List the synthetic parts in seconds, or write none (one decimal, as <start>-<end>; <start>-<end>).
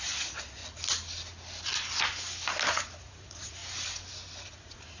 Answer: 0.0-0.6; 2.7-3.6; 4.4-5.0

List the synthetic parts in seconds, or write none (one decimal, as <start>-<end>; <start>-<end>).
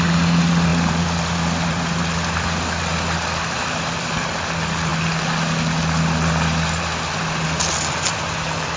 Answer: 0.7-2.8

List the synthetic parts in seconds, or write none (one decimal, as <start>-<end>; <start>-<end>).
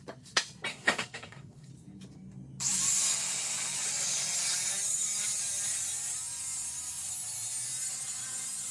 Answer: 0.7-1.7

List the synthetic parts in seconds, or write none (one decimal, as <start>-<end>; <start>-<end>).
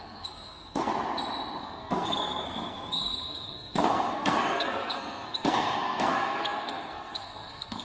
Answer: 0.0-0.9; 1.6-7.8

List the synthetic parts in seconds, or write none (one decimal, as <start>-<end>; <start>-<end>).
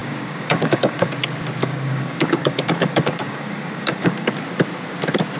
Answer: 0.0-1.1; 1.6-4.3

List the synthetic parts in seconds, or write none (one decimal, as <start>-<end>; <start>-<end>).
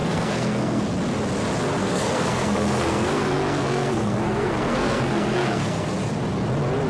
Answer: 0.0-0.8; 1.8-5.9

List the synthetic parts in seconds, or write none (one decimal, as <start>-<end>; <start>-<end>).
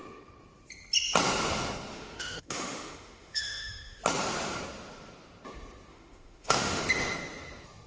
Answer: 1.9-4.0; 5.9-6.8